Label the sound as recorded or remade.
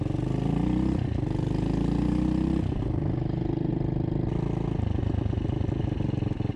recorded